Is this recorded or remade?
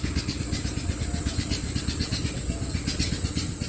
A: recorded